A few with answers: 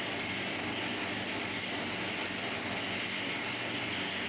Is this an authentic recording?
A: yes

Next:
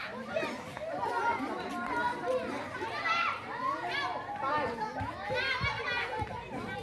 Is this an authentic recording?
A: yes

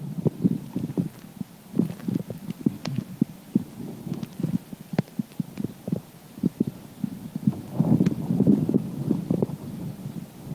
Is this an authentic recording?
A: yes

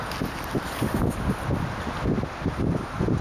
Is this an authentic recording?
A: yes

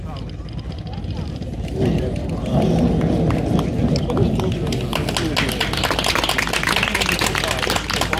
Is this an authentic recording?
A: yes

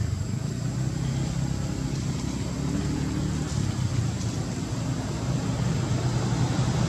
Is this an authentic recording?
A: yes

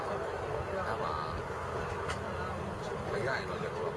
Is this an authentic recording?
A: yes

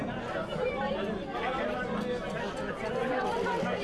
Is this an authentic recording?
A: yes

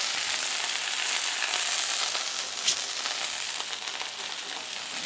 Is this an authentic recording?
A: yes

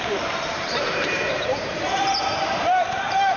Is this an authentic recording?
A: no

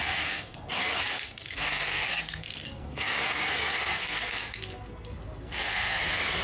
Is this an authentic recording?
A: no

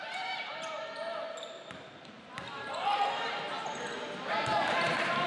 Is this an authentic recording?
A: no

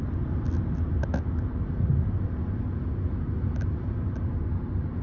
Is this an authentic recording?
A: yes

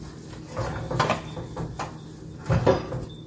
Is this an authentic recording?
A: yes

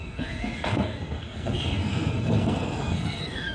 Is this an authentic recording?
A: no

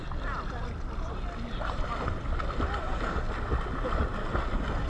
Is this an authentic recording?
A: yes